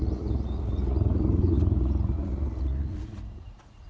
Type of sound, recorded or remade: remade